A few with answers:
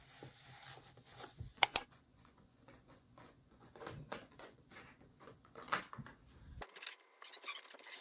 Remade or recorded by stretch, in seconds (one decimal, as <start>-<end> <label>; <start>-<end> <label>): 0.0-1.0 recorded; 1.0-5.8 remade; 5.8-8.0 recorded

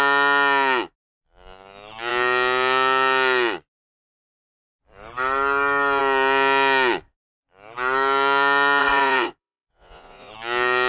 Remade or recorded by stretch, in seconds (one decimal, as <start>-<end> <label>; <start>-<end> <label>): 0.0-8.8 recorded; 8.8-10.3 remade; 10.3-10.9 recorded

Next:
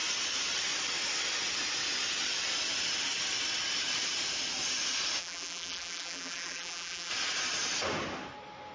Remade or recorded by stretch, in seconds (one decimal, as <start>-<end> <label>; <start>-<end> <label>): 0.0-5.2 recorded; 5.2-7.1 remade; 7.1-8.7 recorded

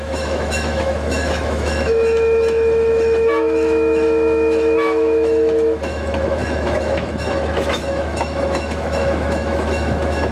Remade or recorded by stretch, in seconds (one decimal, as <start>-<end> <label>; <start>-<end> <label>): 0.0-10.3 remade